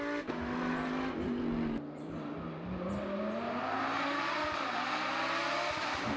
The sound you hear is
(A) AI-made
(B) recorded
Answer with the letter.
B